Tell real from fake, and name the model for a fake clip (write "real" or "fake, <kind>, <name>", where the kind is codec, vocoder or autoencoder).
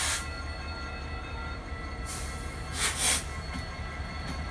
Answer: real